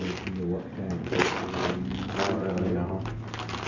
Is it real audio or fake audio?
real